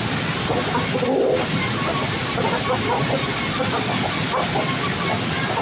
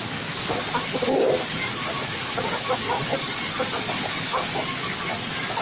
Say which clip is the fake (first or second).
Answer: second